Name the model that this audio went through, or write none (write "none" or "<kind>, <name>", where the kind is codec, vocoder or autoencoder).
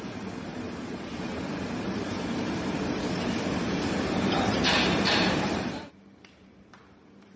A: vocoder, BigVGAN v2